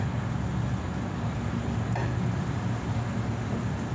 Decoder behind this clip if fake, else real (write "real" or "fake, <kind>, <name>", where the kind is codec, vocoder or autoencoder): real